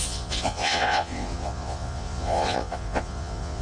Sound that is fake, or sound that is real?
fake